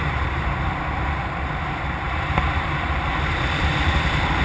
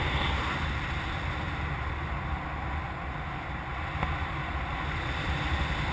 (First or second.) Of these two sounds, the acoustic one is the second